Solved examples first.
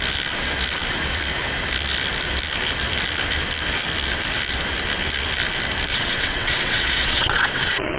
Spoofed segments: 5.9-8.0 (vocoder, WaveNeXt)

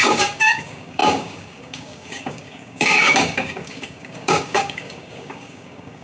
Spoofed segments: 0.0-6.0 (codec, DAC)

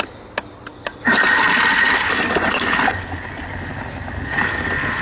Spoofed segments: none

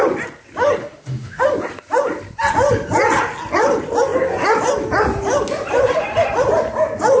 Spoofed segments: 0.8-1.4 (autoencoder, DAC-VAE)

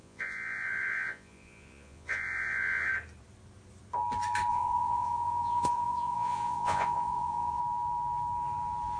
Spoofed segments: 0.0-2.9 (vocoder, Vocos); 4.5-7.6

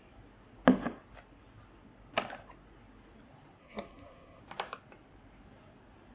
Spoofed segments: 3.6-4.4 (codec, SNAC)

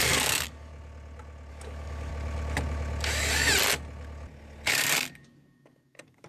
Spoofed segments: 0.0-0.7 (codec, DAC); 1.5-2.1; 4.7-6.3